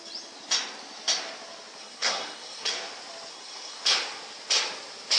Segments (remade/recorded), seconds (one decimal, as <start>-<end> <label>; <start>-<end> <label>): 0.0-1.8 recorded; 1.8-2.7 remade; 2.7-3.3 recorded; 3.3-3.8 remade; 3.8-5.2 recorded